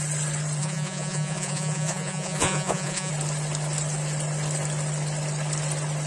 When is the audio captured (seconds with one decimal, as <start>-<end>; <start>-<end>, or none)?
0.0-0.6; 3.1-6.1